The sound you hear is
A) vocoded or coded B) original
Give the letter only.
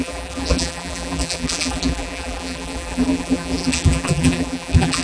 A